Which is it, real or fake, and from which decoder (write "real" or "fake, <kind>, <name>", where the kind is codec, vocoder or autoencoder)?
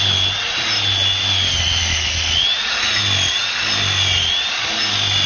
real